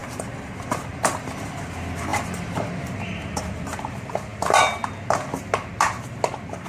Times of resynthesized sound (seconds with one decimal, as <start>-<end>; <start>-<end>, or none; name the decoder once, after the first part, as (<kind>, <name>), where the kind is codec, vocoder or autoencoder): 0.0-1.6 (vocoder, BigVGAN v2); 2.1-3.4